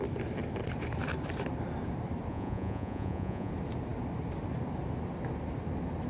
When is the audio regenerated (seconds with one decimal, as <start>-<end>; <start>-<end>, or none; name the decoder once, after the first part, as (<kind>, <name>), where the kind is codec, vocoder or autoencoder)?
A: 2.3-3.5 (vocoder, Vocos)